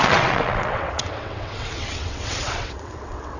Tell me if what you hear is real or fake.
fake